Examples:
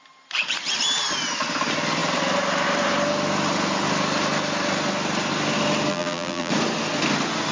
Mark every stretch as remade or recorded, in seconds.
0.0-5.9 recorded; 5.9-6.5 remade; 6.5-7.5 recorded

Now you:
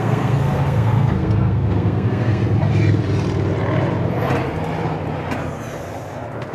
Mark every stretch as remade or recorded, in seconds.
0.0-2.4 remade; 2.4-6.5 recorded

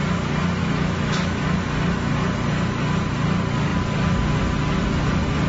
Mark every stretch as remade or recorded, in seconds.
0.0-0.6 recorded; 0.6-1.4 remade; 1.4-5.5 recorded

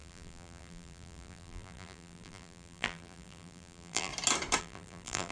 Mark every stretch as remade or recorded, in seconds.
0.0-4.1 remade; 4.1-4.6 recorded; 4.6-5.3 remade